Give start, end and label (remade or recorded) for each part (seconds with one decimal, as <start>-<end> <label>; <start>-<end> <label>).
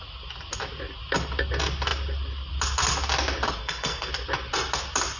0.0-3.6 recorded; 3.6-4.1 remade; 4.1-5.2 recorded